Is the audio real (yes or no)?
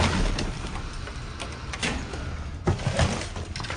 yes